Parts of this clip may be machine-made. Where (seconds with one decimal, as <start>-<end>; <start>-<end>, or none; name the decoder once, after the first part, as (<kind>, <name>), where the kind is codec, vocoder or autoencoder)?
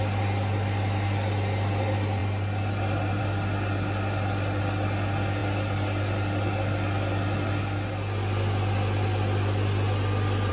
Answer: none